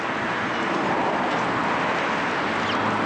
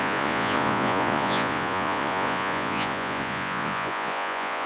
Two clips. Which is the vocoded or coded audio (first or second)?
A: second